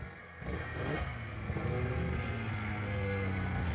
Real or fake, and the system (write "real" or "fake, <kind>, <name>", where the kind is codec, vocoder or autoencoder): fake, codec, SNAC